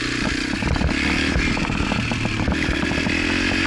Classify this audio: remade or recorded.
recorded